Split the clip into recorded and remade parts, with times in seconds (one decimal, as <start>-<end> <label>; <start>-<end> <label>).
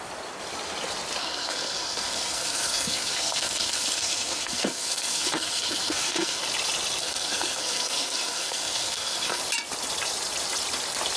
0.0-1.2 recorded; 1.2-6.4 remade; 6.4-7.0 recorded; 7.0-9.4 remade; 9.4-11.2 recorded